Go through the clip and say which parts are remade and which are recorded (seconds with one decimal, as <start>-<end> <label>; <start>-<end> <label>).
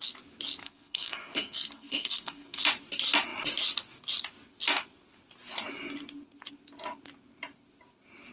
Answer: 0.0-0.6 recorded; 0.6-2.6 remade; 2.6-8.3 recorded